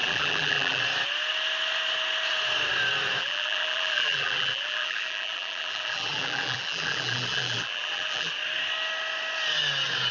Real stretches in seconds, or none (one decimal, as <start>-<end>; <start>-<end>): 0.8-3.2; 8.3-10.1